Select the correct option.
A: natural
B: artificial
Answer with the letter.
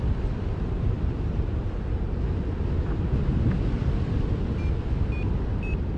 A